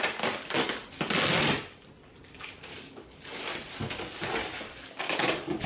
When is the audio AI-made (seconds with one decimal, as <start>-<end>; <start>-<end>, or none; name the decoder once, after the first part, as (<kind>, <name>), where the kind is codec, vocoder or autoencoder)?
2.7-3.4 (codec, DAC); 4.4-5.7